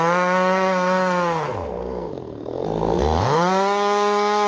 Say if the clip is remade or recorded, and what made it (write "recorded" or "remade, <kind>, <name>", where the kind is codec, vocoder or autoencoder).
remade, codec, SNAC